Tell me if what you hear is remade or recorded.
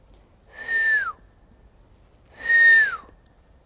recorded